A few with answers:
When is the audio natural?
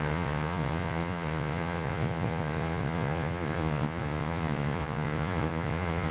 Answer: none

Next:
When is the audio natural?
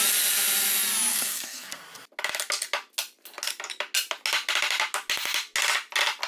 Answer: 0.0-1.1; 1.8-6.3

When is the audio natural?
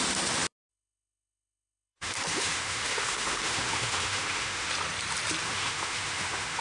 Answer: 0.0-0.7; 4.7-5.4